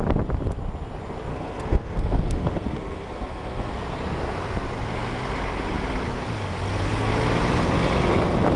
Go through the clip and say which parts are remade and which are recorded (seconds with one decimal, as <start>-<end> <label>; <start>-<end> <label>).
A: 0.0-1.3 recorded; 1.3-3.7 remade; 3.7-8.6 recorded